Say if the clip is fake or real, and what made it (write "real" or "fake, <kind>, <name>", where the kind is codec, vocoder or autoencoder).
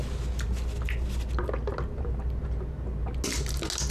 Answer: real